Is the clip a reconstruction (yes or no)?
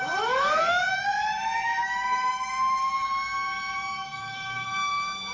yes